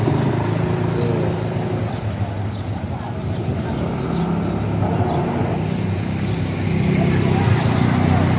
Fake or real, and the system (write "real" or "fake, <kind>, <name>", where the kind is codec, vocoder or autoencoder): real